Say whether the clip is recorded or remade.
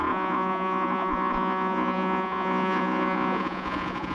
remade